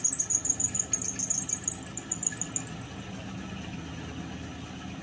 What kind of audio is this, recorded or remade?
recorded